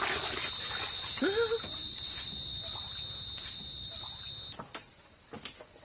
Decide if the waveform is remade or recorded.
recorded